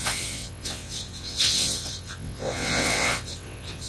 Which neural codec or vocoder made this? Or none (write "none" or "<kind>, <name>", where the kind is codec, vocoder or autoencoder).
vocoder, WaveNeXt